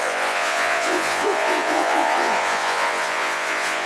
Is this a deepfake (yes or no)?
yes